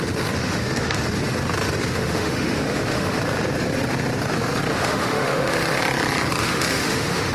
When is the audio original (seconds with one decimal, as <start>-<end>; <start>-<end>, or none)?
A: 0.0-0.4; 1.0-1.9; 3.2-4.7; 5.8-6.4

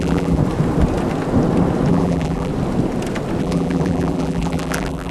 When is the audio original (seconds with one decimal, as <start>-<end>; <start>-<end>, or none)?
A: 0.4-1.9; 2.5-3.4

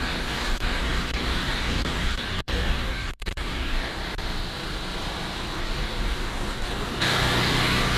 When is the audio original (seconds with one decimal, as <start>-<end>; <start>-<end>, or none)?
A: 4.0-5.6

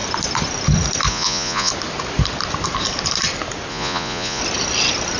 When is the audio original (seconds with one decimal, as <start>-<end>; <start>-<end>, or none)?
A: 0.0-1.1; 1.7-3.7; 4.4-5.2

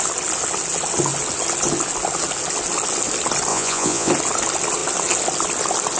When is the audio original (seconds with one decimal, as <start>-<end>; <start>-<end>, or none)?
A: 0.0-3.5; 4.1-6.0